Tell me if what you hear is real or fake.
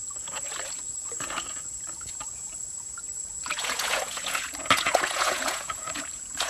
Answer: fake